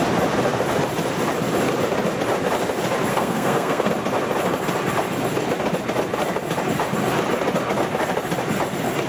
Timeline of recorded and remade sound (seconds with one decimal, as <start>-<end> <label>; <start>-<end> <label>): 0.0-3.1 recorded; 3.1-3.9 remade; 3.9-9.1 recorded